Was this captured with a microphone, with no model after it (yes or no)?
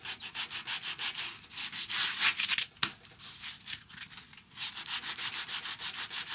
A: yes